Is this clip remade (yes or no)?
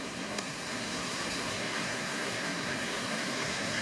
yes